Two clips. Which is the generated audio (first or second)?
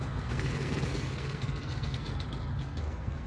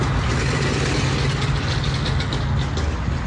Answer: first